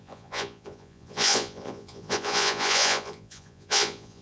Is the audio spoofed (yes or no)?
yes